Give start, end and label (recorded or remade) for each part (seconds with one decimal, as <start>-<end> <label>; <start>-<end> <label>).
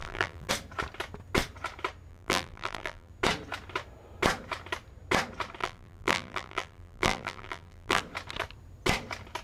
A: 0.0-0.5 remade; 0.5-2.1 recorded; 2.1-3.1 remade; 3.1-5.6 recorded; 5.6-8.0 remade; 8.0-9.4 recorded